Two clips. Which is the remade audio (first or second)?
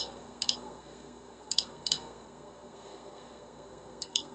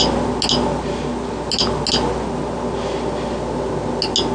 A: first